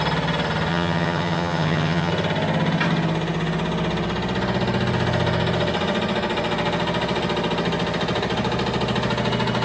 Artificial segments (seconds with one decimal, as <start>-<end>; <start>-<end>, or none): 0.7-2.1